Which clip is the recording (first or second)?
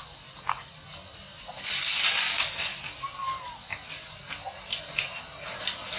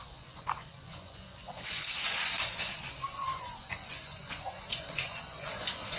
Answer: first